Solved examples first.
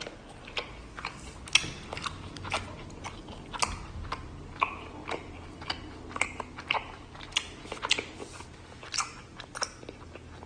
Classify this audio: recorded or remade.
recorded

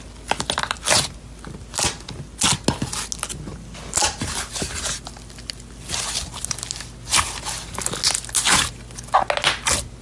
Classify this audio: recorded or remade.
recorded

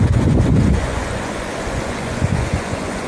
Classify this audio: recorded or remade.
remade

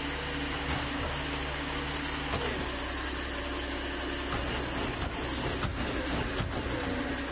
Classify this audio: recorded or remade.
recorded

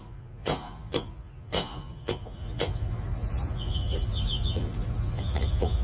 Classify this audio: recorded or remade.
remade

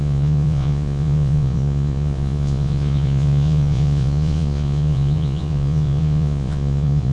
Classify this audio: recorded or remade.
remade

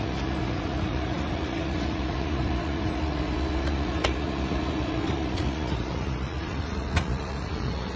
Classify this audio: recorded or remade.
remade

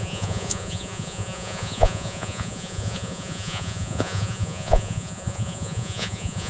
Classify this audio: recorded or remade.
remade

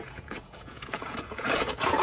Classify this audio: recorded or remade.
remade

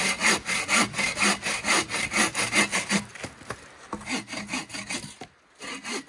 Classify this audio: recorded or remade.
recorded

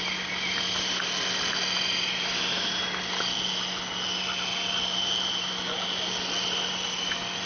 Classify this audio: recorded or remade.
recorded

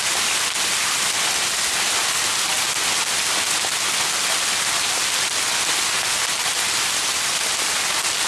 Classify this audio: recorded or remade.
recorded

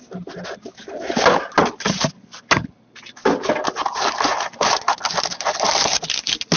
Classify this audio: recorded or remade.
recorded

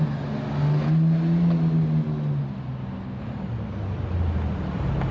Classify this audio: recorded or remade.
recorded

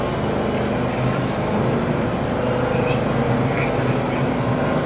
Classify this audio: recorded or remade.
recorded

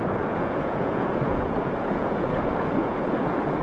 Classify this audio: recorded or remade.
remade